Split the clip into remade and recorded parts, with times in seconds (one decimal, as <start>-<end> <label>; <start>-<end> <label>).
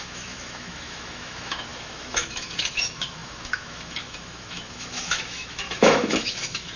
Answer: 0.0-6.8 remade